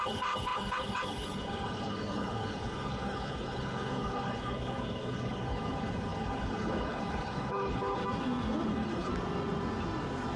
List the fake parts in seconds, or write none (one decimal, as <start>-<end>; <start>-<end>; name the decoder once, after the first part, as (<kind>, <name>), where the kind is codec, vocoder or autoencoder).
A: 0.0-8.0 (codec, HILCodec); 8.7-9.1